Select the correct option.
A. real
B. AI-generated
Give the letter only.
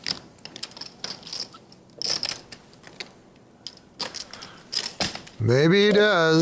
A